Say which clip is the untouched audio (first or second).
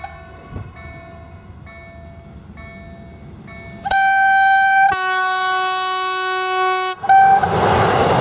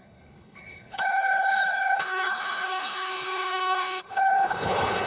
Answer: first